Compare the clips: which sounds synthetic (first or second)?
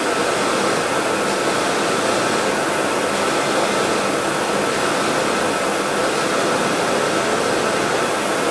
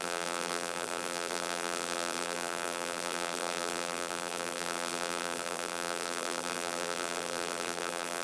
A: second